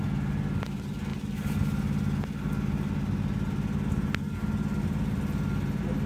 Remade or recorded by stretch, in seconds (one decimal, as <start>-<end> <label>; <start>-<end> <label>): 0.0-6.1 recorded